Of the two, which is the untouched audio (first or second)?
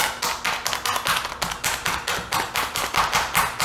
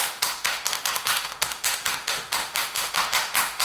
first